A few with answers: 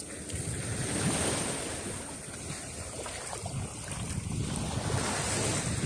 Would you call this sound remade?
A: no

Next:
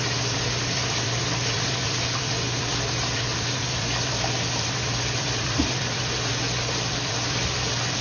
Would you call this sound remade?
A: yes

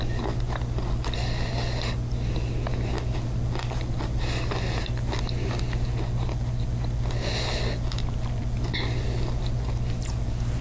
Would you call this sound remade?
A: no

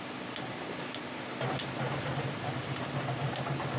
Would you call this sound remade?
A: no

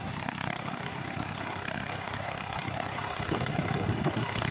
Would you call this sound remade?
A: yes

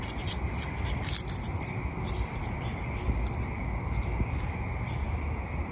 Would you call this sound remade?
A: no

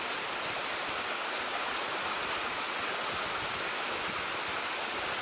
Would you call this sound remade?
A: no